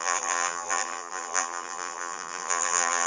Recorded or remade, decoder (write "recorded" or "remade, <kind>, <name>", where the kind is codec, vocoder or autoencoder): remade, vocoder, BigVGAN v2